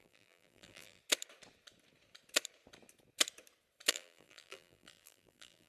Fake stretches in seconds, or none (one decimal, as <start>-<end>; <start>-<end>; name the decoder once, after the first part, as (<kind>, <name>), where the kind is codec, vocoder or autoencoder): 0.0-1.0 (vocoder, BigVGAN v2); 3.9-5.7